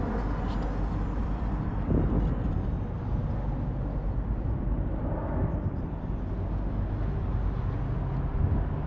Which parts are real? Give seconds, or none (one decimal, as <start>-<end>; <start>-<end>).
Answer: 0.0-1.2; 1.9-8.9